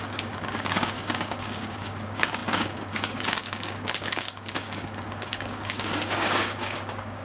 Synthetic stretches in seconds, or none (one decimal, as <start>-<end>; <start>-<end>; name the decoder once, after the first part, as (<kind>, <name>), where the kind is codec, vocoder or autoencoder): 0.0-7.2 (codec, DAC)